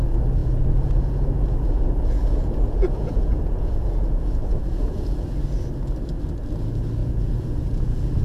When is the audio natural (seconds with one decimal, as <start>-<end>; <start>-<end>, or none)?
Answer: 0.0-0.4; 5.2-7.0

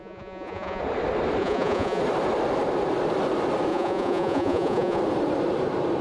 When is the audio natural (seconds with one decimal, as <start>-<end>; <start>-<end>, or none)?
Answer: 0.8-1.4; 2.0-3.7; 5.0-6.0

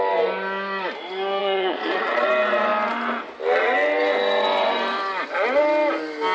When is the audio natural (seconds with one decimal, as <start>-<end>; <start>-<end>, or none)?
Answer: 0.0-1.4; 2.3-6.3

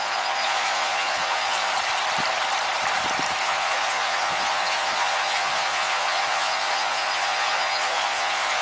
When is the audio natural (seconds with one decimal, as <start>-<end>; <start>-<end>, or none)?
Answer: 1.7-3.4